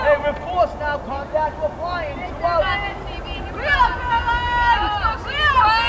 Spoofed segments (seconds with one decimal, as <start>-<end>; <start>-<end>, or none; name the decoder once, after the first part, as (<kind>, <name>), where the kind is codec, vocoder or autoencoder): none